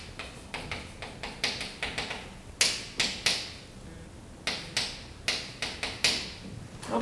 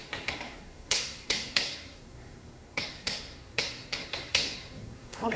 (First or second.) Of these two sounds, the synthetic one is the second